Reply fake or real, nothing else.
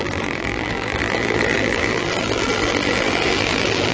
fake